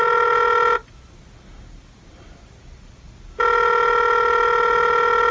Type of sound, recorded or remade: recorded